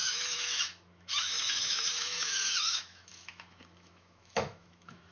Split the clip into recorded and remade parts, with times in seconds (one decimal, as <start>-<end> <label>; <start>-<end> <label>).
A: 0.0-5.1 remade